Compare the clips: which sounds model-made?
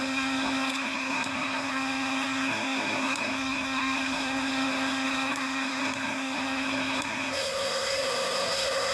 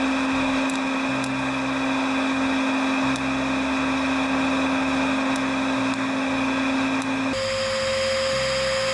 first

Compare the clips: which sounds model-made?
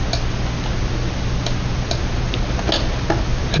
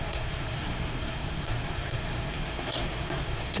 second